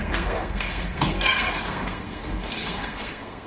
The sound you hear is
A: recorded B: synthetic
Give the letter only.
B